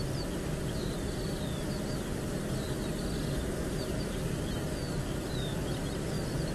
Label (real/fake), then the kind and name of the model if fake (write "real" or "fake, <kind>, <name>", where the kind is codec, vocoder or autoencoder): real